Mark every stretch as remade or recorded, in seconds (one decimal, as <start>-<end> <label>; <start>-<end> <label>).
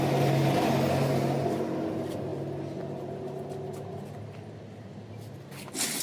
0.0-6.0 recorded